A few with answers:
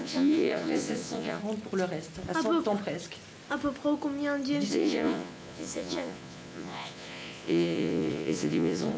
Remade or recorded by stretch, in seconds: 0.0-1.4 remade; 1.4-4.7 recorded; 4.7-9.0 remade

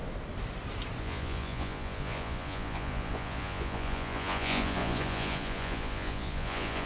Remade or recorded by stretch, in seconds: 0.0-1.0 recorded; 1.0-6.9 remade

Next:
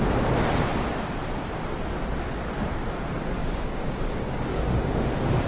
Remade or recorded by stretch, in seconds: 0.0-3.4 recorded; 3.4-5.0 remade; 5.0-5.5 recorded

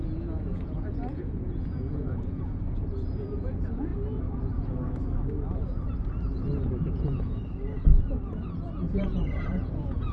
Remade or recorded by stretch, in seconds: 0.0-3.9 remade; 3.9-6.9 recorded; 6.9-7.4 remade; 7.4-8.9 recorded; 8.9-10.1 remade

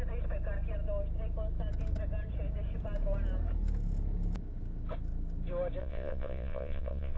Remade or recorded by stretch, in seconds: 0.0-5.8 recorded; 5.8-7.2 remade

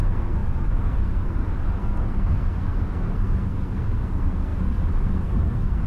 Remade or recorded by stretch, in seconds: 0.0-5.9 remade